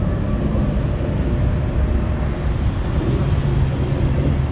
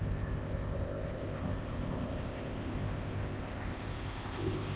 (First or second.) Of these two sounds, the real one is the first